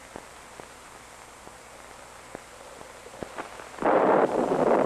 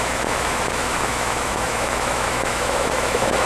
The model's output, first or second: second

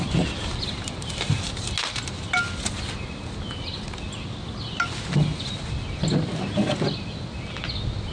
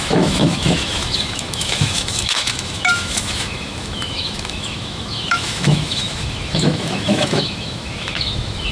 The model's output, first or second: second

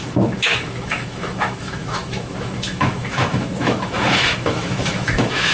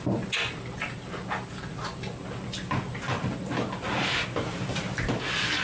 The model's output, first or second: first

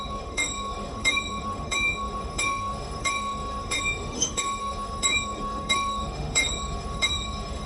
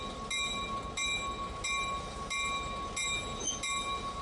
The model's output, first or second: first